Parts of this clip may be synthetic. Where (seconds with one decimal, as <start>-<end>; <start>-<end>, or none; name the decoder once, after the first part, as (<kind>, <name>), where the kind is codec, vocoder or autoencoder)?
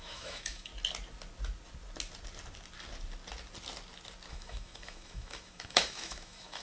0.0-0.7 (autoencoder, DAC-VAE); 4.3-6.6